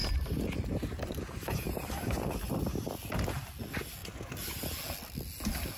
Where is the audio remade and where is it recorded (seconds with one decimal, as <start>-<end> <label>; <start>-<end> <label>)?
0.0-2.9 remade; 2.9-5.8 recorded